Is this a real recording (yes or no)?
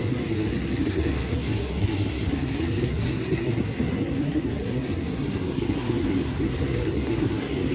no